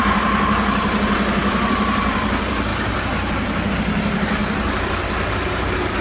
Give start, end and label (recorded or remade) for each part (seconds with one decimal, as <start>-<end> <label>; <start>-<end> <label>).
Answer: 0.0-2.7 remade; 2.7-3.7 recorded; 3.7-4.4 remade; 4.4-5.3 recorded; 5.3-6.0 remade